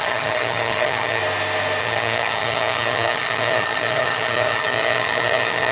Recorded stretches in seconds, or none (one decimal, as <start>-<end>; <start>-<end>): 1.2-1.8